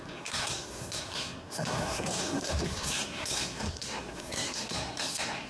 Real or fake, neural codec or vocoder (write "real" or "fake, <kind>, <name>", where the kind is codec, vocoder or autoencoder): fake, codec, SNAC